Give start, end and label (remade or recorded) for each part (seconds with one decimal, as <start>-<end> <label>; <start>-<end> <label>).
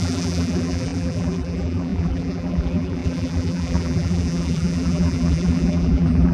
0.0-6.3 remade